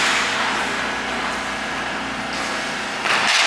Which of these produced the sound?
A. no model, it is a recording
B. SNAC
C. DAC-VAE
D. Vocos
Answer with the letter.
A